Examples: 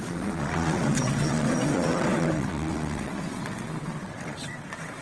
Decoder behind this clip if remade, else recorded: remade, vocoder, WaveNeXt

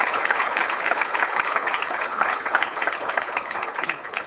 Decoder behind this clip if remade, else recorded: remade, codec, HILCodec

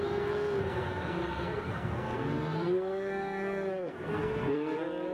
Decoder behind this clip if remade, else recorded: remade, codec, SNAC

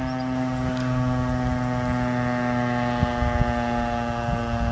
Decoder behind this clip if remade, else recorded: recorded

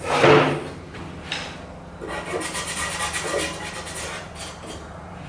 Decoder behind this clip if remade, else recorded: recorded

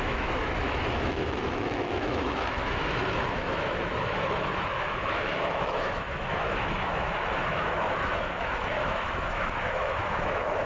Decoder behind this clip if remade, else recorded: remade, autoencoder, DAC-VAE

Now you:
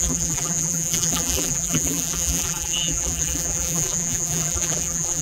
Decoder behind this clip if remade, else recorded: remade, vocoder, BigVGAN v2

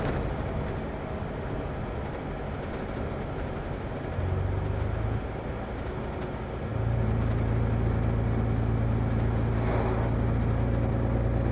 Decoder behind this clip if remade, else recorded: recorded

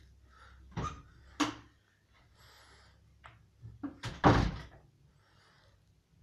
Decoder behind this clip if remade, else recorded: recorded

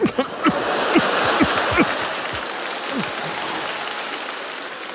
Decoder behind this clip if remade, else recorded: recorded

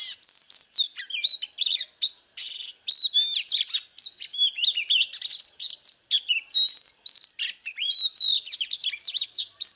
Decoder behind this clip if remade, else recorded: recorded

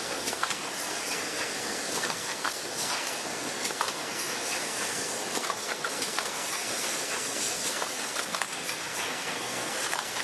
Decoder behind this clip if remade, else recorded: remade, codec, SNAC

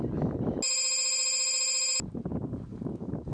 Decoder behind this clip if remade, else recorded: recorded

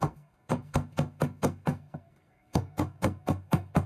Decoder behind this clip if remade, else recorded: remade, codec, SNAC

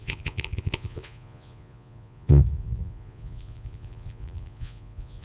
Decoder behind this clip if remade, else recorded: remade, vocoder, Vocos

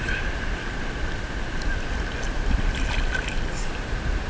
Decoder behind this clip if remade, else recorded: recorded